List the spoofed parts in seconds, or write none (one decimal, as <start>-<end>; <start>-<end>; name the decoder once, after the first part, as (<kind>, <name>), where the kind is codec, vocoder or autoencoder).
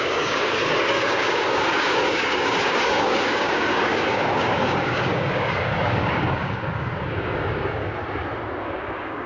0.0-8.0 (codec, DAC); 8.6-9.3